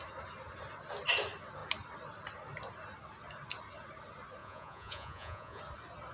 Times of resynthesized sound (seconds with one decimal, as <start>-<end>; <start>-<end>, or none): 4.4-5.6